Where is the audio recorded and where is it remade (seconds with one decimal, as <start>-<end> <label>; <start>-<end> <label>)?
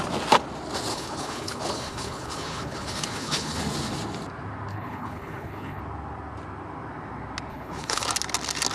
0.0-0.9 recorded; 0.9-3.6 remade; 3.6-4.7 recorded; 4.7-5.8 remade; 5.8-7.5 recorded; 7.5-8.0 remade; 8.0-8.7 recorded